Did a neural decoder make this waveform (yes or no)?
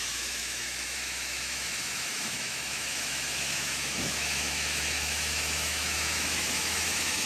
yes